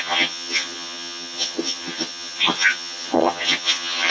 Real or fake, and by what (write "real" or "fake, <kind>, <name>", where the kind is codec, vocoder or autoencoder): fake, vocoder, HiFi-GAN